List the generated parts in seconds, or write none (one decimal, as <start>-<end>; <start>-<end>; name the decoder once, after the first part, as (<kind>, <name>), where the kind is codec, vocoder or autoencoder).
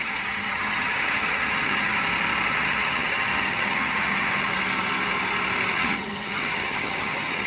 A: 0.0-1.9 (vocoder, HiFi-GAN); 2.5-4.5; 5.7-7.5